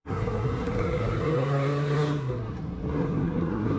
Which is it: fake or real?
fake